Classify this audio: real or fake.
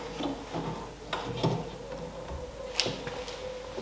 real